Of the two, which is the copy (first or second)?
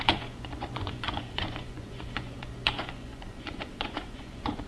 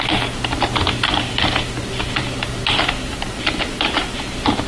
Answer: first